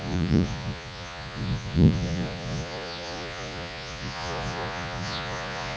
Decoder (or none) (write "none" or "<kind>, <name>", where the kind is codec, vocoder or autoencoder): vocoder, Vocos